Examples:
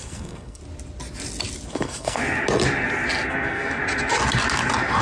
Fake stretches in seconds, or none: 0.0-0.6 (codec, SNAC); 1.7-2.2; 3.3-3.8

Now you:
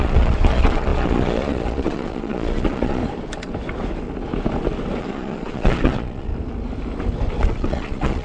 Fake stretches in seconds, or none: 0.0-3.0 (vocoder, Vocos); 5.0-6.3; 7.4-8.2

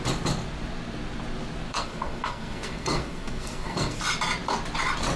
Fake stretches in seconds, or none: 1.7-4.0 (codec, SNAC)